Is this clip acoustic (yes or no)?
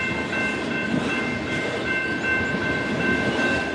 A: yes